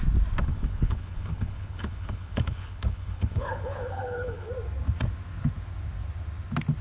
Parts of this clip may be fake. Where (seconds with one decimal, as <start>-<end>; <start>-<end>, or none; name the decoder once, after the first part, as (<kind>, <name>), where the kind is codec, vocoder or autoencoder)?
0.4-4.5 (codec, HILCodec)